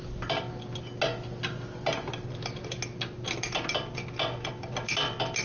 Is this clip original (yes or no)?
yes